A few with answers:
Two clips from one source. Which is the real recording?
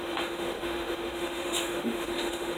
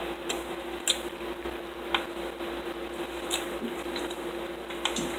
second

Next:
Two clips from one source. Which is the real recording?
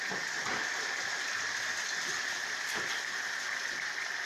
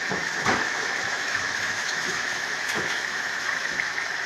first